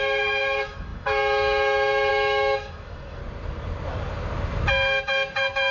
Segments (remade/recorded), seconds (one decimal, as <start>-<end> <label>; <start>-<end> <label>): 0.0-3.2 remade; 3.2-4.7 recorded; 4.7-5.7 remade